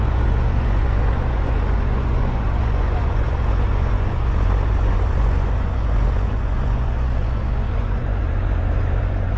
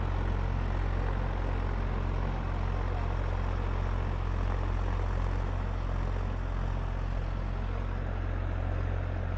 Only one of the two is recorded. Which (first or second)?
second